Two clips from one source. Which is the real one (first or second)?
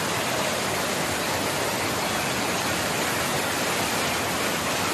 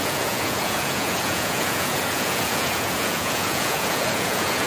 first